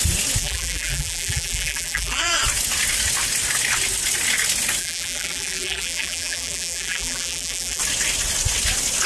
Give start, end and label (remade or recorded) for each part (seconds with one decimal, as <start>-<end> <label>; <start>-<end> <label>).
0.0-0.4 recorded; 0.4-2.3 remade; 2.3-4.8 recorded; 4.8-7.8 remade; 7.8-9.1 recorded